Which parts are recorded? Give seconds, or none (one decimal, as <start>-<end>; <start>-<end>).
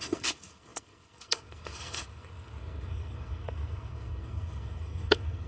none